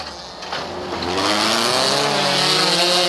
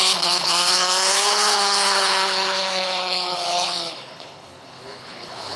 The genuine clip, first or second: first